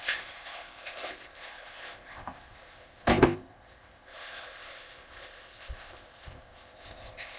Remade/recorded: remade